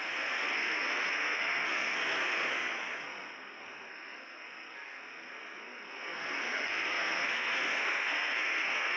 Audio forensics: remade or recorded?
remade